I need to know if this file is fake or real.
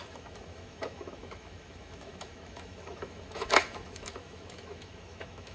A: fake